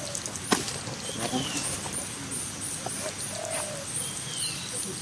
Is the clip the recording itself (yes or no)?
yes